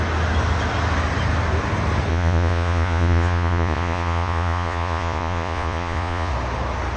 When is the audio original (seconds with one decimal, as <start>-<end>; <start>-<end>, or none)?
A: 0.0-2.1; 6.3-7.0